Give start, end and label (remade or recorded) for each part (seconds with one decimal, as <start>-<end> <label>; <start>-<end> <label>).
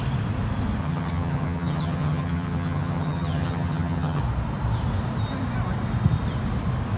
0.0-0.8 recorded; 0.8-4.2 remade; 4.2-7.0 recorded